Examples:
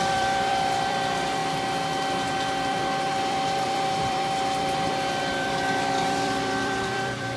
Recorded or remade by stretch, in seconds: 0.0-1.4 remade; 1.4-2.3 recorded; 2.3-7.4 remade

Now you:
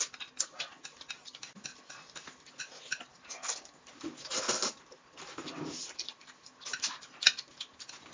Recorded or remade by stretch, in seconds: 0.0-5.4 recorded; 5.4-7.3 remade; 7.3-8.1 recorded

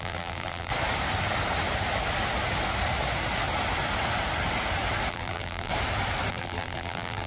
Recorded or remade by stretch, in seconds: 0.0-0.7 remade; 0.7-5.1 recorded; 5.1-5.7 remade; 5.7-6.3 recorded; 6.3-7.3 remade

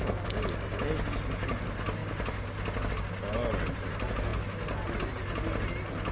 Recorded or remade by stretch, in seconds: 0.0-6.1 recorded

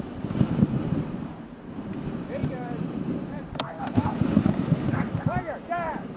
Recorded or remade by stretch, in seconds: 0.0-6.2 remade

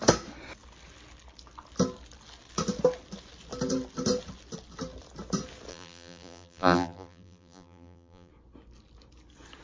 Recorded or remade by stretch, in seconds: 0.0-5.7 recorded; 5.7-8.3 remade; 8.3-9.6 recorded